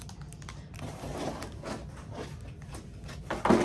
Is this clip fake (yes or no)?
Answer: no